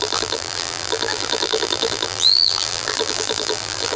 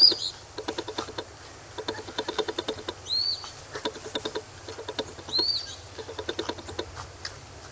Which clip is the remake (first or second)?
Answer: first